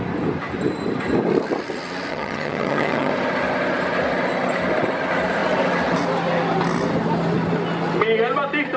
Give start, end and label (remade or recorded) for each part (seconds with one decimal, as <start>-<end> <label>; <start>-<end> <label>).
0.0-2.1 recorded; 2.1-3.1 remade; 3.1-8.8 recorded